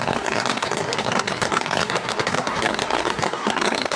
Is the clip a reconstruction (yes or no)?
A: yes